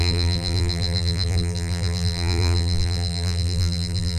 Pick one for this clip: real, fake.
fake